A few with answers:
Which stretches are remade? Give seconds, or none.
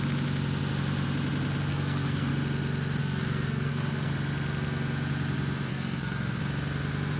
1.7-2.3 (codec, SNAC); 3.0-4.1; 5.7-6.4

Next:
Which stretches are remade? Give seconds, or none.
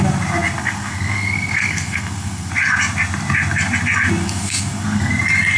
0.6-2.5 (codec, SNAC); 4.2-5.1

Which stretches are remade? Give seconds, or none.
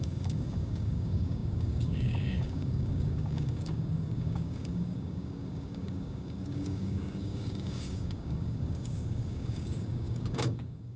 0.0-11.0 (codec, DAC)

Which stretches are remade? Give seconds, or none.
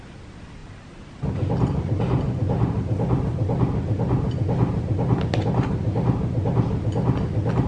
none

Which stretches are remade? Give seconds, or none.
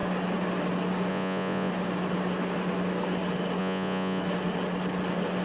1.1-1.7 (vocoder, Vocos); 3.6-4.2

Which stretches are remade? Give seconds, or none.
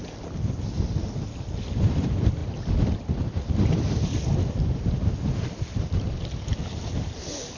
none